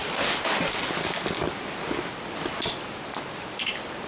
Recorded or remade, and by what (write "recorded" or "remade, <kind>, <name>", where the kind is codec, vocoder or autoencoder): recorded